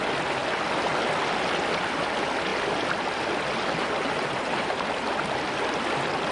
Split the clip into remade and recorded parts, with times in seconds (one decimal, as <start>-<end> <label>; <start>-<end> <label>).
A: 0.0-6.3 recorded